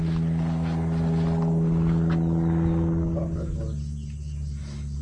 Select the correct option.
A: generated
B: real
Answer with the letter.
B